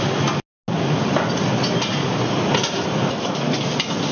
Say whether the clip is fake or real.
real